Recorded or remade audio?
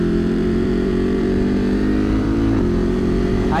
remade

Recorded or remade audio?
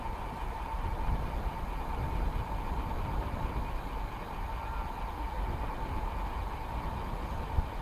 remade